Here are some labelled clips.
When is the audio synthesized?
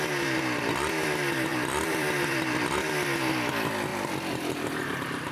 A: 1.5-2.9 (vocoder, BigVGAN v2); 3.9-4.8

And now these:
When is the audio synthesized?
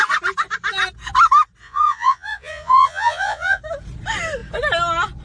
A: 1.6-3.6 (vocoder, Vocos)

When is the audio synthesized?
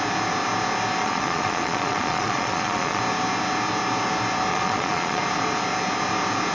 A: 1.0-3.0 (vocoder, Vocos); 4.5-5.2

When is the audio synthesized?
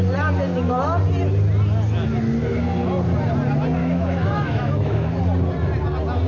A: 3.8-5.2 (autoencoder, DAC-VAE)